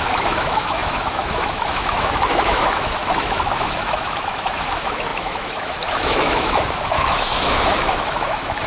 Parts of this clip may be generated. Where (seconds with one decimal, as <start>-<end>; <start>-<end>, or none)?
0.0-8.7

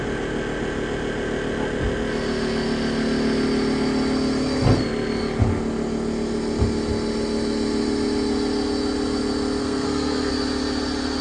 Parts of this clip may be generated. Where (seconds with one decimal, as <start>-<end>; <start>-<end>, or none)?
9.6-10.3

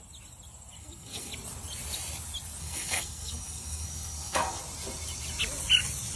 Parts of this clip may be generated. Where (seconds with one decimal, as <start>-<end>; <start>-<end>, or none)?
0.8-1.3; 2.6-4.6

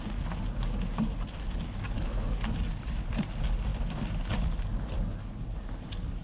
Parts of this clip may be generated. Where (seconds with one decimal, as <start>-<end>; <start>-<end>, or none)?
none

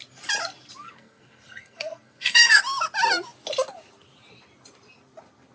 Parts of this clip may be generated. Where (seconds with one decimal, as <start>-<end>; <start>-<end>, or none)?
0.8-2.6